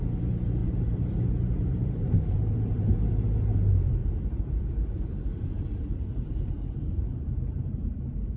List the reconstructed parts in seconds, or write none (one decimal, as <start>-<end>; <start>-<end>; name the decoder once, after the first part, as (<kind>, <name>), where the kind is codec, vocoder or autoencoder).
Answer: 0.6-3.1 (vocoder, BigVGAN v2); 4.0-8.4